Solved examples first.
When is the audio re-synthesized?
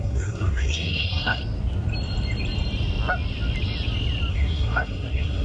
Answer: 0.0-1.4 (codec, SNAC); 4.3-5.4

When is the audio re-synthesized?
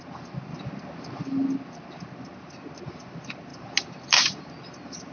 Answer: none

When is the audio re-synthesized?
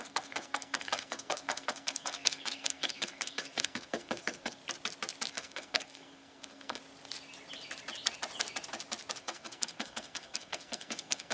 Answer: 0.0-4.6 (codec, SNAC); 5.3-6.8; 9.2-11.3